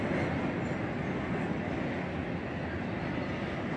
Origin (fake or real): real